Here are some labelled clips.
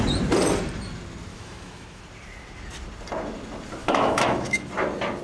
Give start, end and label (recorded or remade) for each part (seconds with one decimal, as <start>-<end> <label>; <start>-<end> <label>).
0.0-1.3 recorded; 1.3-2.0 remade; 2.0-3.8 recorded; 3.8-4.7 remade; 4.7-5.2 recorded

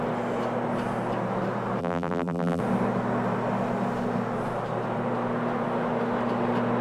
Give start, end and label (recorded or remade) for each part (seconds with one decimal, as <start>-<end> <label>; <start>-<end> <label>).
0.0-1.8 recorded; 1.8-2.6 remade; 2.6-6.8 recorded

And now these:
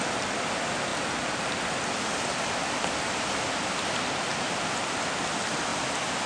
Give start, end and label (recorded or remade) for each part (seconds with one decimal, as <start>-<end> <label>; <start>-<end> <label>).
0.0-0.9 recorded; 0.9-3.9 remade; 3.9-4.3 recorded; 4.3-5.1 remade; 5.1-5.7 recorded; 5.7-6.3 remade

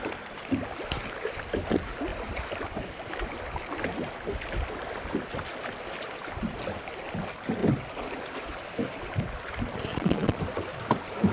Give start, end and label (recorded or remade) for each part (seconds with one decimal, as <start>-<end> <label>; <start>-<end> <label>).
0.0-9.9 recorded; 9.9-10.4 remade; 10.4-11.3 recorded